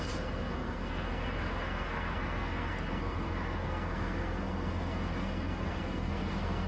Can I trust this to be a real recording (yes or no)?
no